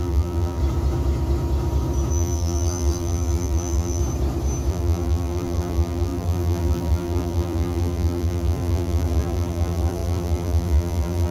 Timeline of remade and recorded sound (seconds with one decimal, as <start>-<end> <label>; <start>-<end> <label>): 0.0-0.6 remade; 0.6-2.1 recorded; 2.1-4.0 remade; 4.0-4.7 recorded; 4.7-11.3 remade